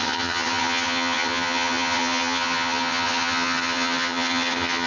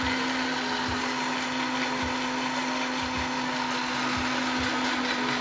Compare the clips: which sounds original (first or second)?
second